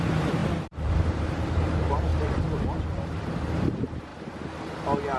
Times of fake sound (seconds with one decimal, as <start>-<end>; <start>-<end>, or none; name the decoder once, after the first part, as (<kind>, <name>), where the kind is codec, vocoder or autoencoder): 0.0-2.1 (vocoder, BigVGAN v2); 2.8-4.1